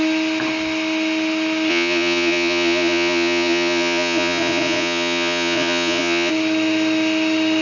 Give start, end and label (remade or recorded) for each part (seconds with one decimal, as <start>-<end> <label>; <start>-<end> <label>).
0.0-1.7 recorded; 1.7-6.3 remade; 6.3-7.6 recorded